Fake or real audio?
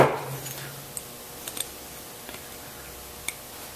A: real